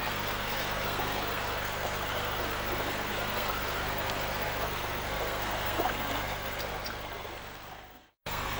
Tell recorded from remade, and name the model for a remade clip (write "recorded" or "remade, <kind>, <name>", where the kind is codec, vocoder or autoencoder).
remade, codec, SNAC